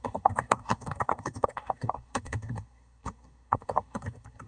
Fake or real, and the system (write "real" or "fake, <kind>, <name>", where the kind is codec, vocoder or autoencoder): fake, codec, SNAC